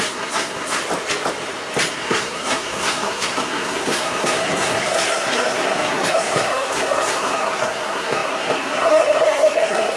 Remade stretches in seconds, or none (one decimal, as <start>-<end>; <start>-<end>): 0.0-0.8; 1.9-10.0